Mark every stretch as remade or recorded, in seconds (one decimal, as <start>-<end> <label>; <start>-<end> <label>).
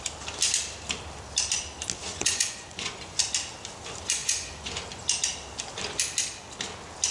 0.0-2.1 recorded; 2.1-3.2 remade; 3.2-4.2 recorded; 4.2-4.7 remade; 4.7-7.1 recorded